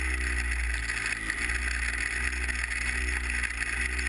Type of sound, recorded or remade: recorded